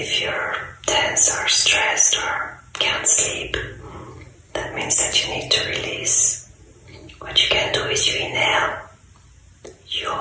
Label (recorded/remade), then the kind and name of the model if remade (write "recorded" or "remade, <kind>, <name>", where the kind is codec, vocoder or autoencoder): recorded